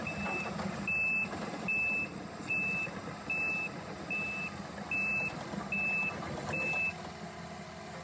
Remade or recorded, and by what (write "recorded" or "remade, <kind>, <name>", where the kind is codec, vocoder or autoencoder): recorded